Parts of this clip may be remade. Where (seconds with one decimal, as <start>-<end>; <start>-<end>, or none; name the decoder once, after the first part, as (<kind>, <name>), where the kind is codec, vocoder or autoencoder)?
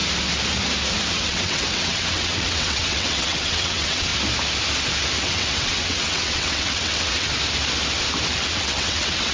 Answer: 1.1-4.1 (vocoder, WaveNeXt); 5.2-7.3; 8.5-9.3